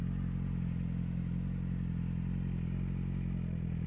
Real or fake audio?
real